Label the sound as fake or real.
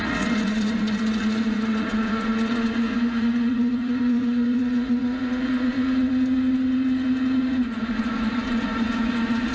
fake